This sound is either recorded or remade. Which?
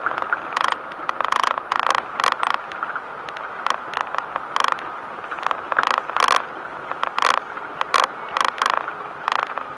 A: recorded